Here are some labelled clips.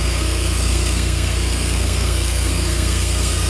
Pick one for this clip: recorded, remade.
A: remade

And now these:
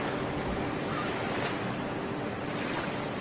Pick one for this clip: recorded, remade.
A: recorded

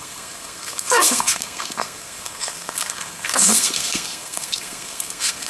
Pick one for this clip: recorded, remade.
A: remade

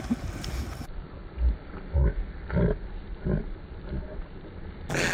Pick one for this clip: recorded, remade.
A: recorded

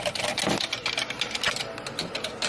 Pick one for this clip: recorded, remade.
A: recorded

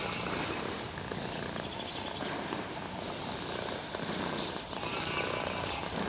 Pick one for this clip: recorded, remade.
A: recorded